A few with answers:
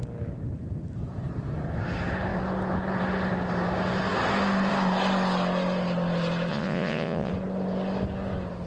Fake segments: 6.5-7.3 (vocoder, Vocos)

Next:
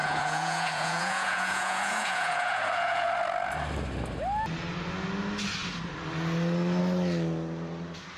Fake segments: 0.0-3.1 (vocoder, Vocos)

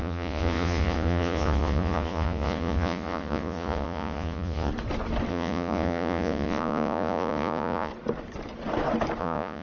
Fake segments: 0.0-4.7 (vocoder, Vocos); 5.3-7.9; 9.2-9.6

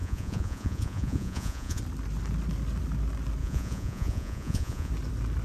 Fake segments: 0.0-1.8 (vocoder, Vocos); 3.4-4.9